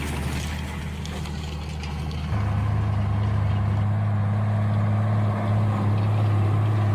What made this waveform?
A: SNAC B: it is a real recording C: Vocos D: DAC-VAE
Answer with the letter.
B